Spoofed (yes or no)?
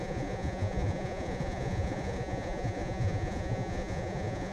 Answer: yes